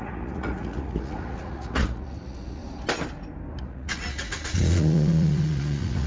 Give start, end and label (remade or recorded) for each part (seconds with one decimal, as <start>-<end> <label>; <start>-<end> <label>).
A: 0.0-2.6 remade; 2.6-3.6 recorded; 3.6-6.1 remade